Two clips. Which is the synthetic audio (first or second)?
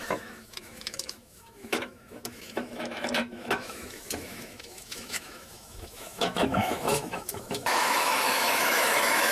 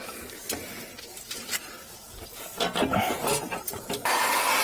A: first